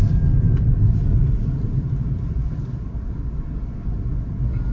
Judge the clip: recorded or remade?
remade